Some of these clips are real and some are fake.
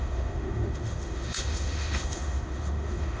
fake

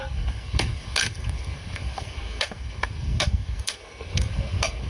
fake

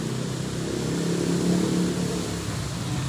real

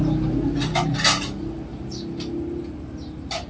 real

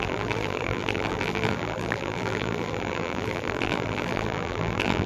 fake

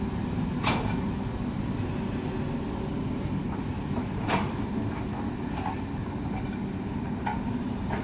real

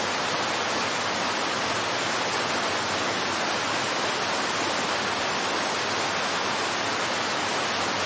real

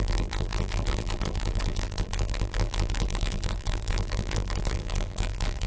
fake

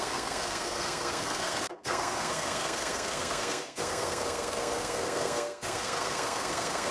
fake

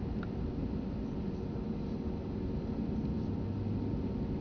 real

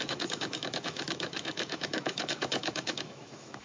fake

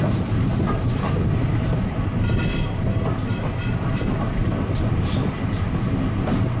real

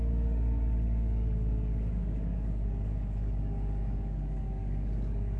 fake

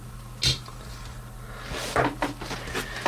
real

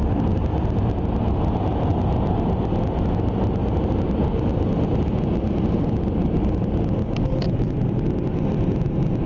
real